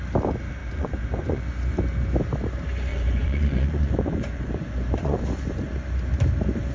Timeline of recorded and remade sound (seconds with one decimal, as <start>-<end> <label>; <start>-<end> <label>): 0.0-0.6 recorded; 0.6-1.4 remade; 1.4-2.9 recorded; 2.9-5.2 remade; 5.2-6.7 recorded

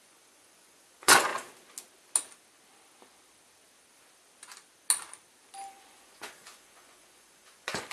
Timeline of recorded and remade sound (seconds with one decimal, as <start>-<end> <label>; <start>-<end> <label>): 0.0-1.3 remade; 1.3-5.7 recorded; 5.7-7.9 remade

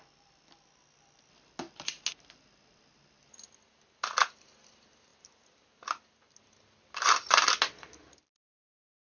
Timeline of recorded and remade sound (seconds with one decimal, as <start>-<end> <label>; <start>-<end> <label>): 0.0-9.0 recorded

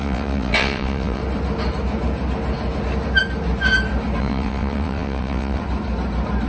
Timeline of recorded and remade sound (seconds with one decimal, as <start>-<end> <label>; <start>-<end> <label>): 0.0-1.2 remade; 1.2-4.2 recorded; 4.2-5.6 remade; 5.6-6.5 recorded

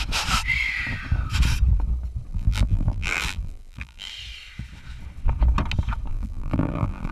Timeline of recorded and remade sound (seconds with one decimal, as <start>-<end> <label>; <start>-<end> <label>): 0.0-2.3 recorded; 2.3-4.1 remade; 4.1-6.1 recorded; 6.1-7.1 remade